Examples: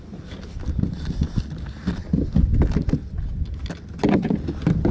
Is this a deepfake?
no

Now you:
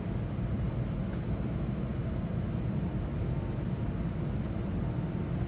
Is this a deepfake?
no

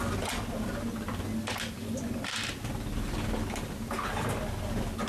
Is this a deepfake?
no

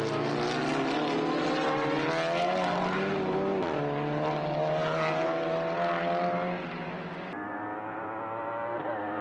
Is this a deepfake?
no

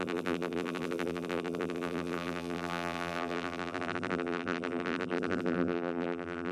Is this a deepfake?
yes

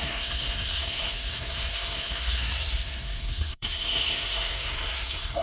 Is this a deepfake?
yes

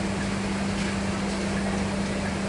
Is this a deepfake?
no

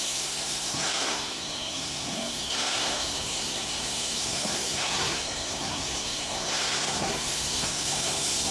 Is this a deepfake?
yes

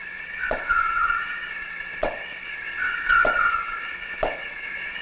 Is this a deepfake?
yes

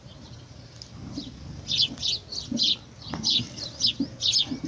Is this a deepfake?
no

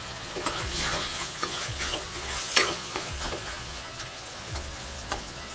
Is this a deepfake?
yes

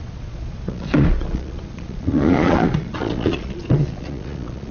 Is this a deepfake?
yes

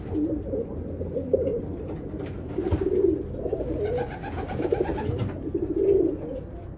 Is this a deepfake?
no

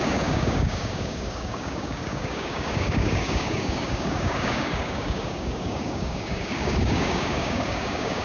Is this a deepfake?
yes